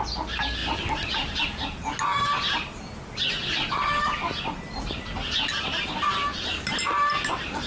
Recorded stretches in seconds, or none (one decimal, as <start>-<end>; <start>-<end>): 0.0-7.7